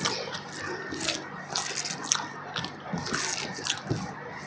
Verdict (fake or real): real